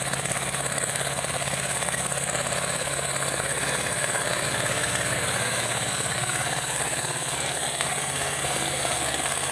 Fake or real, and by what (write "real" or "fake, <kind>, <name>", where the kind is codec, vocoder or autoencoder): fake, codec, SNAC